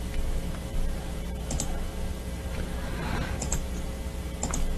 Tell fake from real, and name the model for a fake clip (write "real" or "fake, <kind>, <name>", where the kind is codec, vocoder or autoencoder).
real